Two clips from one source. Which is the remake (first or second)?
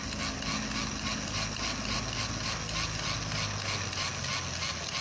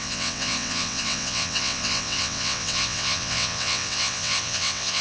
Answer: second